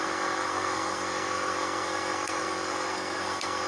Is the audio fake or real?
fake